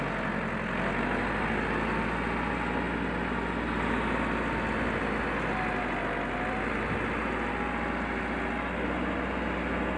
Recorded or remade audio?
recorded